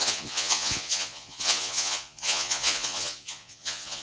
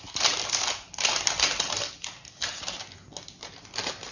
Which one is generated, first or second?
first